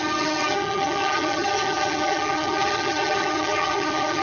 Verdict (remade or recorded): remade